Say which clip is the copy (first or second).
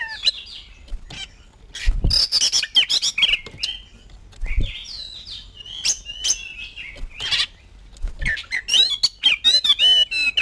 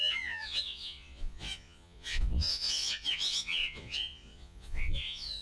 second